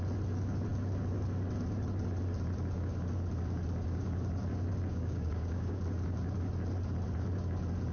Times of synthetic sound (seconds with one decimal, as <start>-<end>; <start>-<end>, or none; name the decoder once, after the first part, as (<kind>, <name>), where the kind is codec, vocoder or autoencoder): 4.9-5.8 (codec, DAC)